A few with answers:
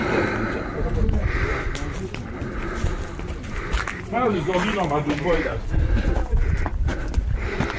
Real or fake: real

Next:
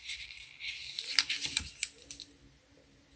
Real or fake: real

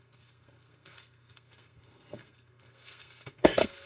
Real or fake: fake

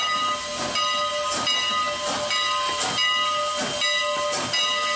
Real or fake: real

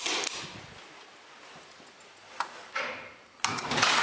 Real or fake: real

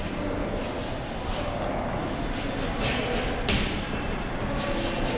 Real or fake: real